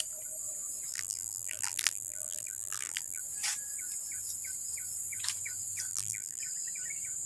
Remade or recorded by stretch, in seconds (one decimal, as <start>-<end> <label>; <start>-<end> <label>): 0.0-0.9 recorded; 0.9-3.2 remade; 3.2-5.9 recorded; 5.9-6.4 remade; 6.4-7.3 recorded